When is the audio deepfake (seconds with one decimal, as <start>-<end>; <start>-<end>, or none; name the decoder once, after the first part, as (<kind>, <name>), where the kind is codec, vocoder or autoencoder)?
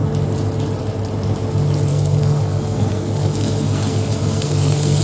1.9-5.0 (codec, SNAC)